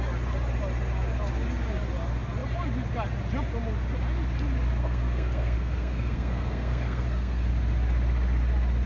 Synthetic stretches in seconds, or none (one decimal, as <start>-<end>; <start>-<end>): 4.8-7.5